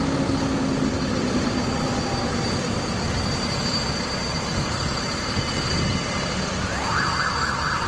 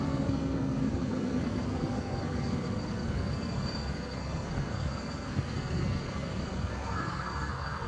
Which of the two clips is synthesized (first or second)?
second